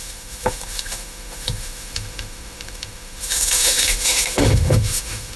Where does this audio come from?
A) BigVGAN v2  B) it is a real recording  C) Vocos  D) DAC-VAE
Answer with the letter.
D